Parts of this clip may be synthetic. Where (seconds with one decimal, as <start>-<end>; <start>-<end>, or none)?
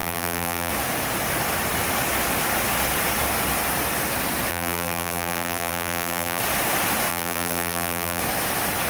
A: 0.0-0.7; 4.5-6.4; 7.1-8.2